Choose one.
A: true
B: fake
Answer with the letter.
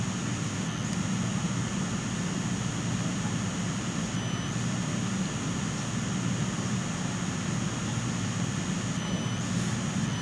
A